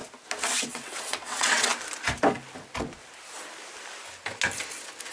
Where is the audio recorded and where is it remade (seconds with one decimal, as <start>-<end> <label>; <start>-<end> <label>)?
0.0-0.6 recorded; 0.6-1.7 remade; 1.7-5.1 recorded

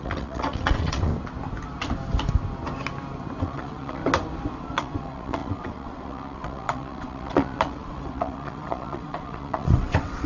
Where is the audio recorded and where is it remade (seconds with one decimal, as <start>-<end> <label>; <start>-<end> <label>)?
0.0-1.1 remade; 1.1-3.4 recorded; 3.4-4.0 remade; 4.0-4.7 recorded; 4.7-10.3 remade

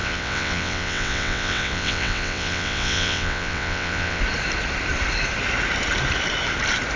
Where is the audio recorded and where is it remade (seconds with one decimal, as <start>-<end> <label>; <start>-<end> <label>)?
0.0-4.2 remade; 4.2-7.0 recorded

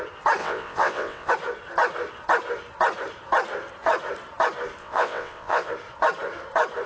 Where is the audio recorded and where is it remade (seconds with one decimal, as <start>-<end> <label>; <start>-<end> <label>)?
0.0-0.4 recorded; 0.4-1.3 remade; 1.3-4.8 recorded; 4.8-5.7 remade; 5.7-6.9 recorded

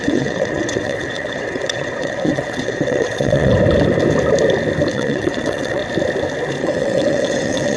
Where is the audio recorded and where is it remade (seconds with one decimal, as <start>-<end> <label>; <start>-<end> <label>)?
0.0-3.5 remade; 3.5-4.9 recorded; 4.9-5.8 remade; 5.8-6.6 recorded; 6.6-7.8 remade

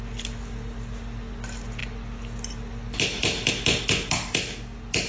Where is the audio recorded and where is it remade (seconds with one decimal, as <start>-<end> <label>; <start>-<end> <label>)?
0.0-5.1 recorded